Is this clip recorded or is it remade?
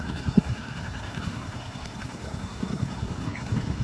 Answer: remade